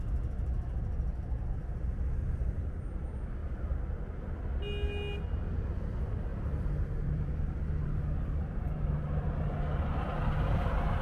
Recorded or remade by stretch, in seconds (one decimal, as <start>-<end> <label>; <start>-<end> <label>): 0.0-2.2 recorded; 2.2-2.8 remade; 2.8-3.4 recorded; 3.4-3.9 remade; 3.9-6.3 recorded; 6.3-7.3 remade; 7.3-11.0 recorded